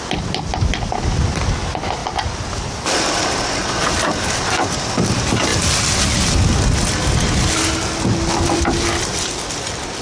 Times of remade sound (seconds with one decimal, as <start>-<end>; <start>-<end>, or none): 2.0-4.8